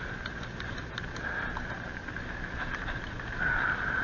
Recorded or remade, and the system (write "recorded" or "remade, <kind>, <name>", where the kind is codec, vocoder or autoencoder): recorded